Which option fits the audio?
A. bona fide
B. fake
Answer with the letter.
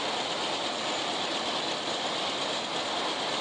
A